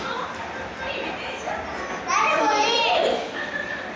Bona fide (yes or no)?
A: yes